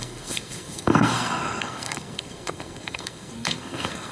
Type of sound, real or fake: fake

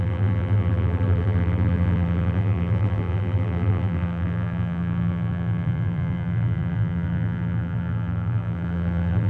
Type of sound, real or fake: fake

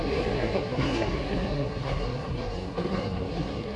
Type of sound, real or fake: fake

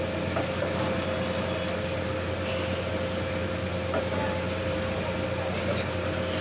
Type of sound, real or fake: real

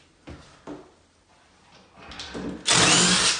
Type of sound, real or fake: real